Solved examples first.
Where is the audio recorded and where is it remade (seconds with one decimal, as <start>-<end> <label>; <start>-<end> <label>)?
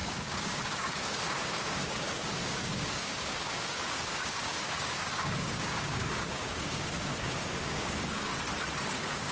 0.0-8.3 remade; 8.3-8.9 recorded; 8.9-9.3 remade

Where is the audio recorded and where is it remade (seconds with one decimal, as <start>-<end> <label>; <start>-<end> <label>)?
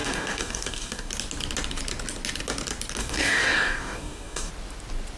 0.0-1.1 remade; 1.1-3.0 recorded; 3.0-4.5 remade; 4.5-5.2 recorded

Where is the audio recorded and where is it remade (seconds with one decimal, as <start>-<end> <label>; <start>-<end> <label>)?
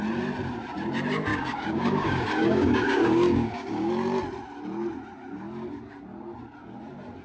0.0-1.3 recorded; 1.3-3.9 remade; 3.9-7.2 recorded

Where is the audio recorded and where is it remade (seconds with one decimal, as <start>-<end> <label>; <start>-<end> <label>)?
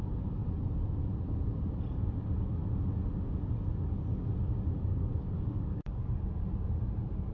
0.0-4.9 recorded; 4.9-6.1 remade; 6.1-7.3 recorded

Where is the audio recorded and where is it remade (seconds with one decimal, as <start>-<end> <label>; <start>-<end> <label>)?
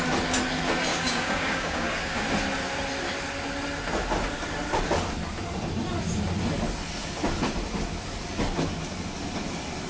0.0-0.9 recorded; 0.9-2.2 remade; 2.2-9.9 recorded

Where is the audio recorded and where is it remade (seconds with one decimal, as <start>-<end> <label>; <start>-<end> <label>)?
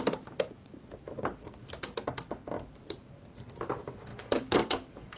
0.0-4.1 recorded; 4.1-5.2 remade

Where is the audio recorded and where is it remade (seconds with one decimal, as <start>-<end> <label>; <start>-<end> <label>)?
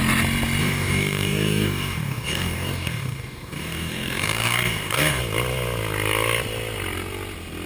0.0-0.6 recorded; 0.6-5.2 remade; 5.2-7.7 recorded